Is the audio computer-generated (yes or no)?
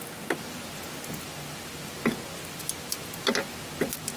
no